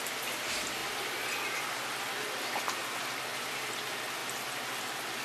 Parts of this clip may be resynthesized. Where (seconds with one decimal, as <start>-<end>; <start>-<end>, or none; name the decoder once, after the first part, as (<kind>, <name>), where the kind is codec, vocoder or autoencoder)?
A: none